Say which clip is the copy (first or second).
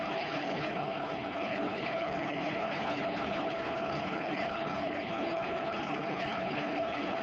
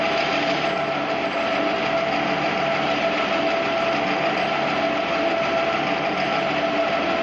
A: first